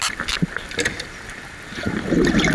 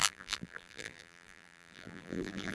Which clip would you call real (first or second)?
first